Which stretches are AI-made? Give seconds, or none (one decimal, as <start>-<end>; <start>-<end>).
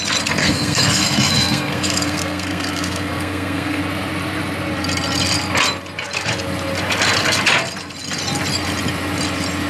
0.4-3.8